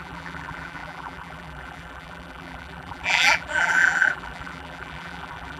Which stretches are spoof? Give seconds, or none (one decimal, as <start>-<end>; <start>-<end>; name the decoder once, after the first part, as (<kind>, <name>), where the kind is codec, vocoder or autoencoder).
0.0-5.6 (vocoder, BigVGAN v2)